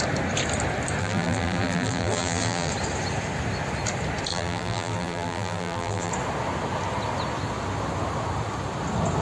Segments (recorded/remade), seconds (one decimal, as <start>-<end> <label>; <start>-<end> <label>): 0.0-1.0 recorded; 1.0-2.7 remade; 2.7-4.3 recorded; 4.3-6.1 remade; 6.1-9.2 recorded